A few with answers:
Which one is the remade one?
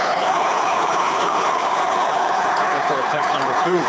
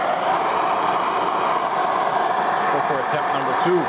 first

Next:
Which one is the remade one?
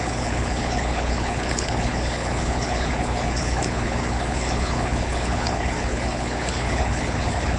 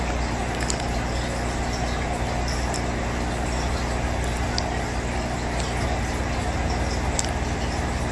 first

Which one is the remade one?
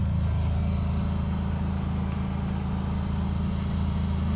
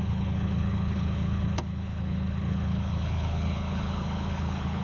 second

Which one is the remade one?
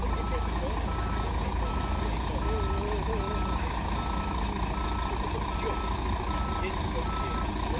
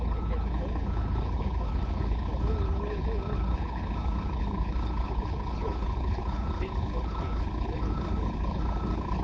second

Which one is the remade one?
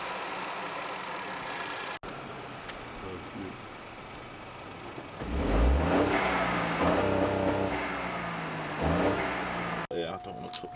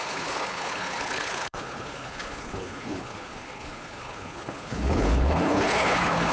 second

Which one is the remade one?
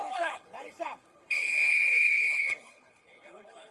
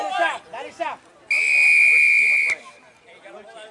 first